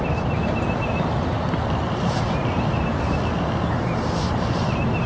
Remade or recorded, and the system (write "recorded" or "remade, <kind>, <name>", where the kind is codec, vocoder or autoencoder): recorded